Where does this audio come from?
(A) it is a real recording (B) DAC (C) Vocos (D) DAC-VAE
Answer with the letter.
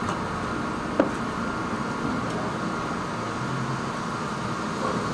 A